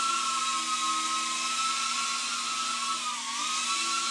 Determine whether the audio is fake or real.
real